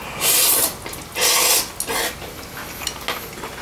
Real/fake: real